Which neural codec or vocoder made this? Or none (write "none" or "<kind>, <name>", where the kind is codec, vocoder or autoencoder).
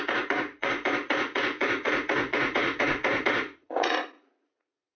vocoder, Vocos